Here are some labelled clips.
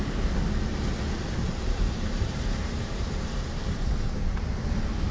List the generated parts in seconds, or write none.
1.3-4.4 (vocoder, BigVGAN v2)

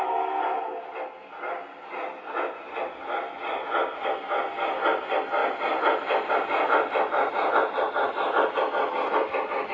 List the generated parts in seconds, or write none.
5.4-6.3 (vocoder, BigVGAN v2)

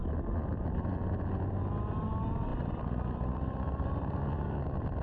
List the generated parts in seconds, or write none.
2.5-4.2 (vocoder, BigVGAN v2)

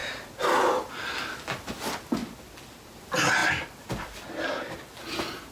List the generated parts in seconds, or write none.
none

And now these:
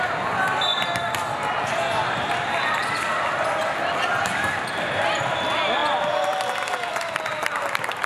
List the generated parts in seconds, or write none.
5.8-6.9 (vocoder, BigVGAN v2)